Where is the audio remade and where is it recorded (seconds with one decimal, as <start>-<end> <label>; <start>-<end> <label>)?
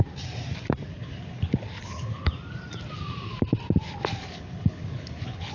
0.0-0.9 recorded; 0.9-2.3 remade; 2.3-4.2 recorded; 4.2-5.5 remade